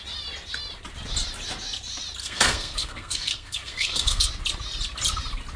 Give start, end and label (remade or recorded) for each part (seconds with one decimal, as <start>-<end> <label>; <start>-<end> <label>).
0.0-2.2 recorded; 2.2-4.3 remade; 4.3-5.6 recorded